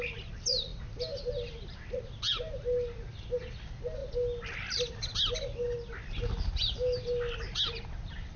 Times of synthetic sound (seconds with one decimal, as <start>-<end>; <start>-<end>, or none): none